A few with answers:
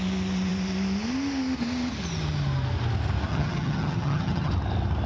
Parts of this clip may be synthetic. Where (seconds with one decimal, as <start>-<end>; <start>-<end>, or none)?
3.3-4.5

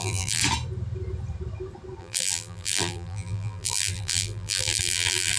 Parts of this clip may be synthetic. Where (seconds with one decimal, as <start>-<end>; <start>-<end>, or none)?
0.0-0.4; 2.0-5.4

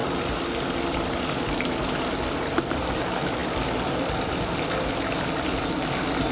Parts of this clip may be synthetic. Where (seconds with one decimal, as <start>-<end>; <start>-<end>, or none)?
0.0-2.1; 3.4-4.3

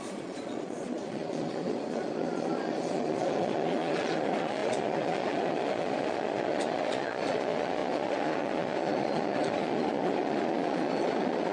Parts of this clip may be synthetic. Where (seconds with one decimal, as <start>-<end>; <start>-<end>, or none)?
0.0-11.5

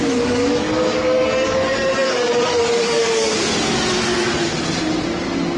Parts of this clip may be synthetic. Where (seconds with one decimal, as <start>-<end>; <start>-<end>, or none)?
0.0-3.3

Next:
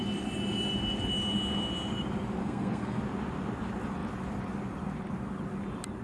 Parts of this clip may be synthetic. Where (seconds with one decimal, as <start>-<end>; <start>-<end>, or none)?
2.4-3.0

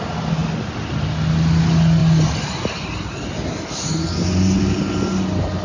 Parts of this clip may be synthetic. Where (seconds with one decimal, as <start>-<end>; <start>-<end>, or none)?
none

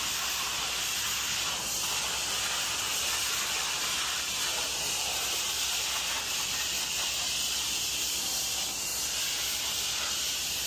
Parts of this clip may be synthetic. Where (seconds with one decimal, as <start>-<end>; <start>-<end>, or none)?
none